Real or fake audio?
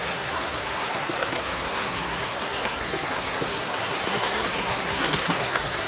fake